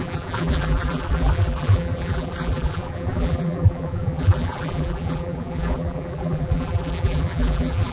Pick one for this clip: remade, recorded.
remade